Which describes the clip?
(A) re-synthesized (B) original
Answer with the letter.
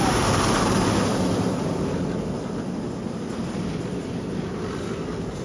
B